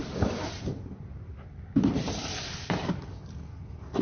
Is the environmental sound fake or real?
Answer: real